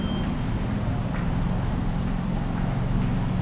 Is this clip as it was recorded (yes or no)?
yes